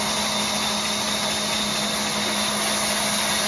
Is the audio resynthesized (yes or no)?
no